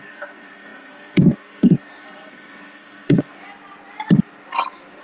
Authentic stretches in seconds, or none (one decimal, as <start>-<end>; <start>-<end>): 3.3-5.0